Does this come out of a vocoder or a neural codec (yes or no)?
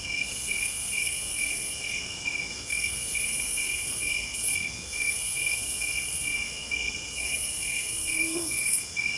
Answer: yes